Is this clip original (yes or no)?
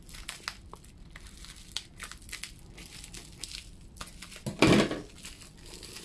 yes